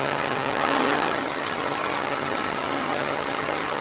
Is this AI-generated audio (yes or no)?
yes